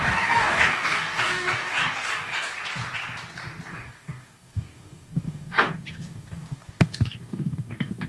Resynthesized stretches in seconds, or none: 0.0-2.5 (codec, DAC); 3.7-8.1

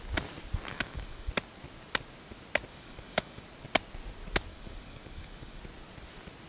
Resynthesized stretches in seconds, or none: 0.7-1.3 (codec, DAC); 2.7-3.4; 4.5-5.6

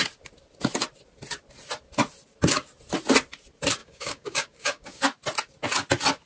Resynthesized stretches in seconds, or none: 3.8-5.0 (codec, DAC)

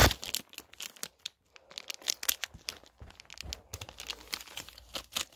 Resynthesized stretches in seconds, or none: none

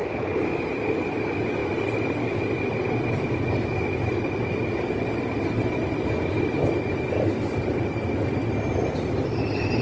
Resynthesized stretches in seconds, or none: 0.0-0.7 (codec, DAC)

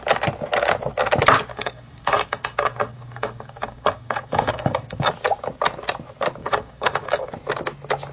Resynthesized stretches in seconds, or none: 1.5-5.1 (codec, DAC); 6.4-7.3

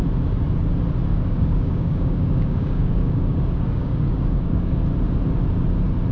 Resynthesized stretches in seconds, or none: 1.1-4.8 (codec, DAC)

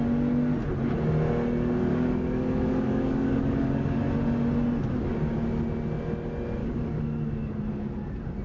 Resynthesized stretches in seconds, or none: 1.9-4.0 (codec, DAC); 6.6-7.6